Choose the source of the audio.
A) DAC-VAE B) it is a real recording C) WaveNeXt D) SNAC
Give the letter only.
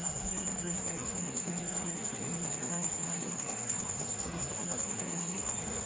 D